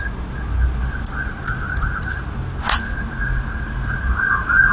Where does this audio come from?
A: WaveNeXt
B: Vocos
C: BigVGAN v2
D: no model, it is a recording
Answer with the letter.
D